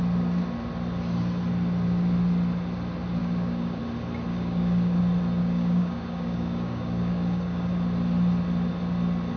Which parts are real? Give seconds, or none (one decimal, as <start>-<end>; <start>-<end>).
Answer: 0.0-3.2; 3.8-4.3; 5.0-5.4; 7.7-9.4